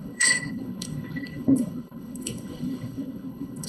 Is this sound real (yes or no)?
no